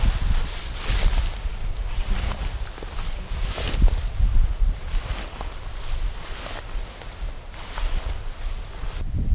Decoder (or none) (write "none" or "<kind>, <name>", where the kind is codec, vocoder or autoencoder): none